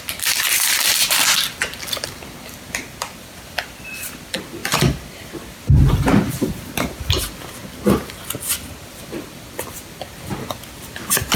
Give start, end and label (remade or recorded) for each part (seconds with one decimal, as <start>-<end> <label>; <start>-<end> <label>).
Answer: 0.0-4.6 remade; 4.6-5.1 recorded; 5.1-7.6 remade; 7.6-8.4 recorded; 8.4-11.4 remade